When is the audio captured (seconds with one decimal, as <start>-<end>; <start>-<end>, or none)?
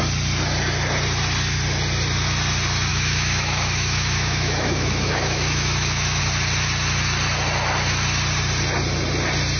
0.0-2.9; 6.2-9.6